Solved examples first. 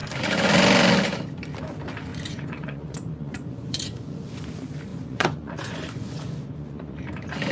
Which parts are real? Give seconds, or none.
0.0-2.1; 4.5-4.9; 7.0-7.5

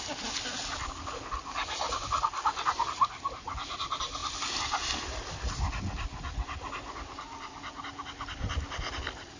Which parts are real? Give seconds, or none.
0.0-9.4

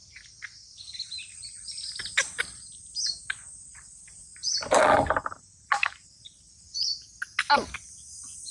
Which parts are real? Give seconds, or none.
0.0-8.5

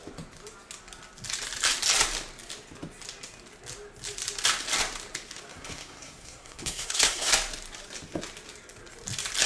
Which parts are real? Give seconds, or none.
0.0-5.5; 7.3-9.5

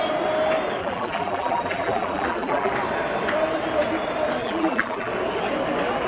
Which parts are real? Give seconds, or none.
0.0-0.8; 2.7-4.4; 5.1-6.1